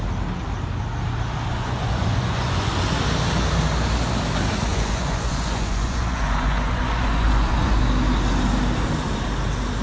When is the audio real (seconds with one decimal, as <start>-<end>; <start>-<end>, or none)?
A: 0.0-1.5; 2.7-4.7; 7.8-9.8